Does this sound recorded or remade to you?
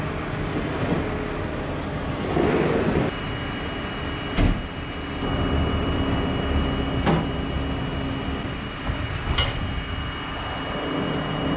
recorded